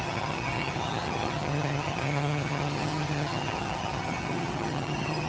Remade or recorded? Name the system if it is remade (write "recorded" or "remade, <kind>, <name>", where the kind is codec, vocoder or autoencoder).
remade, vocoder, HiFi-GAN